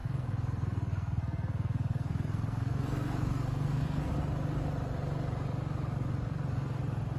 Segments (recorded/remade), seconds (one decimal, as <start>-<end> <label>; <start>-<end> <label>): 0.0-4.1 remade; 4.1-7.2 recorded